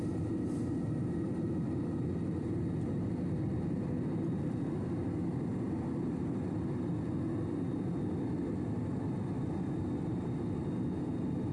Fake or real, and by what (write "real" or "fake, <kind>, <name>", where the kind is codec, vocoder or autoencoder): real